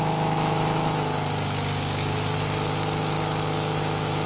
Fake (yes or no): yes